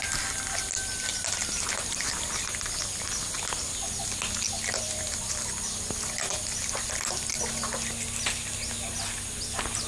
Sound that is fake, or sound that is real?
real